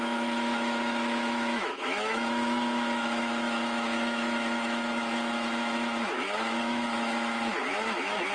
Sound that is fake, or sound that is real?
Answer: fake